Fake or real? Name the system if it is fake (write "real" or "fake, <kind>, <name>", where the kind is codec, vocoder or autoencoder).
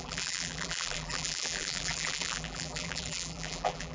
fake, vocoder, BigVGAN v2